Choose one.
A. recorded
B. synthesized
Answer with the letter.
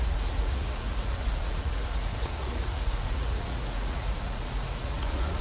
B